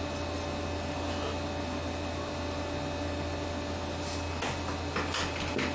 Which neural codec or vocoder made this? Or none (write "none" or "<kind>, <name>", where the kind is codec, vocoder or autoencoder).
none